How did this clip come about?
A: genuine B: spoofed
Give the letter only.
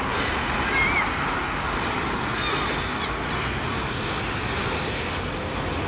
A